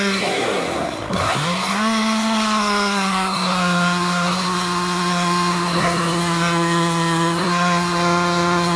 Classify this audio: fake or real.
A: fake